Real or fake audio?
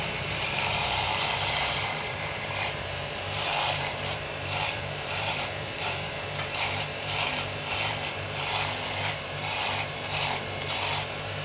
fake